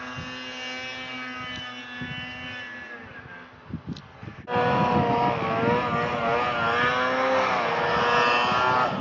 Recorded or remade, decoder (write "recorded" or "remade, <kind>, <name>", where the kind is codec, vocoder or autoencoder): recorded